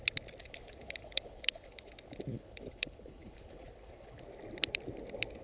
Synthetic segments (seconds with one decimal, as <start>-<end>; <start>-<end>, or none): 0.4-1.9; 2.3-4.2